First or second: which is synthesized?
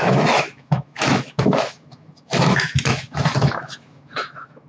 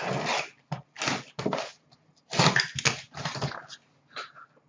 first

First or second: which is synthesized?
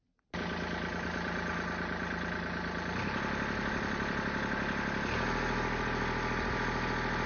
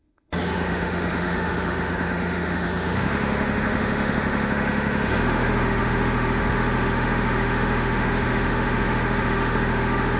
second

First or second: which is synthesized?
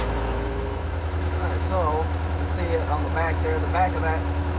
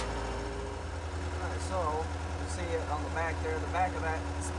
first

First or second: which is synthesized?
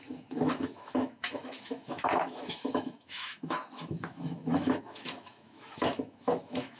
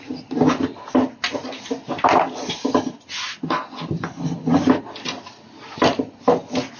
first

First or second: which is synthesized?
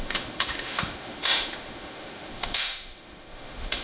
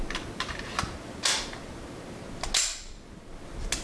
first